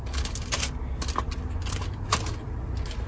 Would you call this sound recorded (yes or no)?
yes